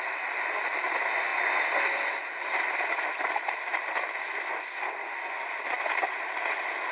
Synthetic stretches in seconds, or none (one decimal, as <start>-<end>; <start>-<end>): none